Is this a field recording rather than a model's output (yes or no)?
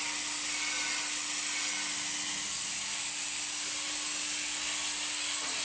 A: yes